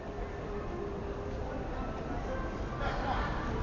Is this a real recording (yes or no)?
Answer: yes